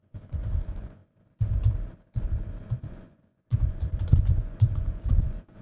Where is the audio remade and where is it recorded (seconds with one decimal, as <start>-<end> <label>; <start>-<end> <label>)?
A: 0.0-1.0 remade; 1.0-2.8 recorded; 2.8-5.6 remade